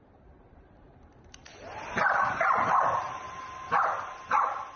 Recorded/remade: remade